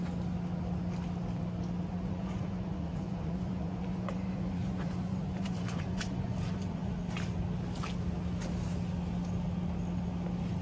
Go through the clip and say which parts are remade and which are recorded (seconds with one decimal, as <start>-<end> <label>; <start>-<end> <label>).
0.0-1.9 recorded; 1.9-6.9 remade; 6.9-10.6 recorded